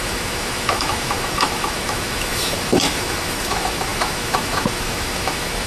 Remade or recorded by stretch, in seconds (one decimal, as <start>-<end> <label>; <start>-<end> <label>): 0.0-5.7 remade